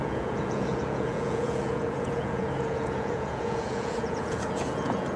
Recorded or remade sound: remade